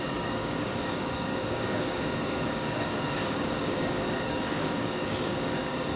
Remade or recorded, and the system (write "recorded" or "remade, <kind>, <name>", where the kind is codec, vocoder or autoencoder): remade, codec, DAC